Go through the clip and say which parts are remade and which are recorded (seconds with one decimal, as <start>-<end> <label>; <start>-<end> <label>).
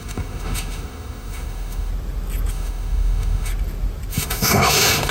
0.0-1.9 remade; 1.9-2.5 recorded; 2.5-3.5 remade; 3.5-4.1 recorded; 4.1-5.1 remade